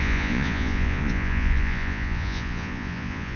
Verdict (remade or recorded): remade